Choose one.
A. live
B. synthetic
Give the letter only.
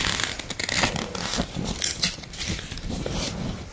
A